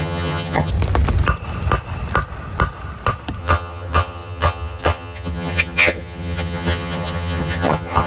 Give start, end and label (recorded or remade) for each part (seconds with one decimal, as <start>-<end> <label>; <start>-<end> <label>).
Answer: 0.0-0.7 remade; 0.7-3.4 recorded; 3.4-8.1 remade